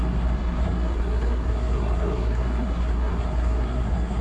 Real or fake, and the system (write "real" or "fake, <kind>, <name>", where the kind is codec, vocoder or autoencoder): fake, codec, SNAC